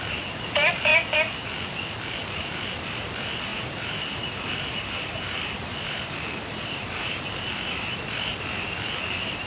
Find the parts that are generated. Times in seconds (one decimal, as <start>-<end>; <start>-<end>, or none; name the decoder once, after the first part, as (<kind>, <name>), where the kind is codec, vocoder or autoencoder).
0.0-0.9 (vocoder, BigVGAN v2); 2.1-9.5